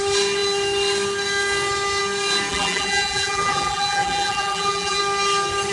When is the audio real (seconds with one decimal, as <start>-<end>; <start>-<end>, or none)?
0.0-2.5; 5.0-5.7